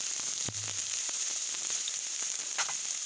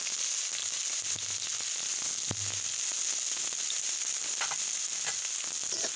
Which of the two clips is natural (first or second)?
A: second